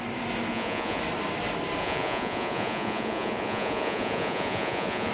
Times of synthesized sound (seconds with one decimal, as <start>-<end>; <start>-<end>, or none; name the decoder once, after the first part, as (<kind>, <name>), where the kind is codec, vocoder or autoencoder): 0.5-1.0 (vocoder, Vocos); 1.8-5.1